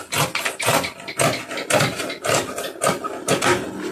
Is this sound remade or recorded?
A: recorded